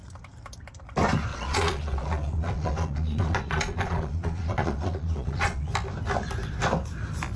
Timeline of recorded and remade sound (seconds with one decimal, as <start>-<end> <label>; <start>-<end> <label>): 0.0-1.3 recorded; 1.3-5.7 remade; 5.7-7.4 recorded

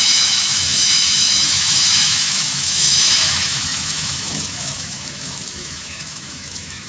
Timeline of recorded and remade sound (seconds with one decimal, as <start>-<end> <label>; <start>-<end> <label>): 0.0-6.9 remade

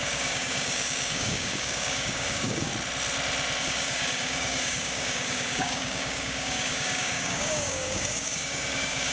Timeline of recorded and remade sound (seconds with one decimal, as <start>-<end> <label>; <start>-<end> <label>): 0.0-2.7 remade; 2.7-3.6 recorded; 3.6-9.1 remade

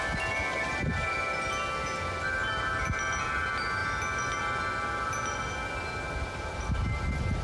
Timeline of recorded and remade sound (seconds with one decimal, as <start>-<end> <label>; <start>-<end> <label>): 0.0-7.4 recorded

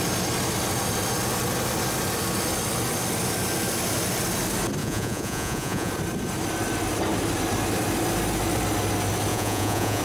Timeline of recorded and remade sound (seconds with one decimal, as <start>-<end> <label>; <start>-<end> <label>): 0.0-4.8 recorded; 4.8-5.9 remade; 5.9-9.3 recorded; 9.3-10.0 remade

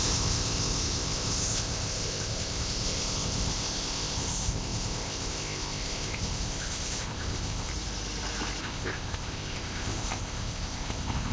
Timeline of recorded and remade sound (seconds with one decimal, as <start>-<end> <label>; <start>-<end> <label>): 0.0-7.7 remade; 7.7-8.6 recorded; 8.6-11.3 remade